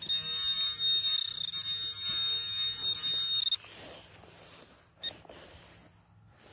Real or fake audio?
real